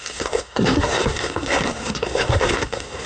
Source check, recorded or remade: remade